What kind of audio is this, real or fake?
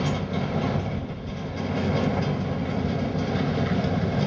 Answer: real